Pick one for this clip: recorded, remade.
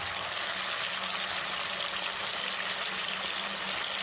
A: recorded